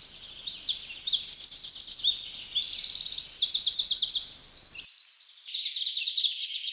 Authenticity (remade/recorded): recorded